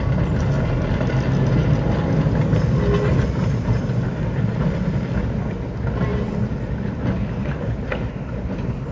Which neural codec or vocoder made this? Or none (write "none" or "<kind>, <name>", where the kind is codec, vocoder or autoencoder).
none